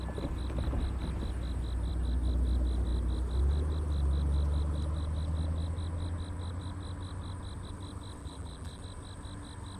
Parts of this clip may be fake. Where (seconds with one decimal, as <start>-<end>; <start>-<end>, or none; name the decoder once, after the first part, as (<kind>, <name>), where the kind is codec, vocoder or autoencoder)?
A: 8.2-8.8 (vocoder, BigVGAN v2)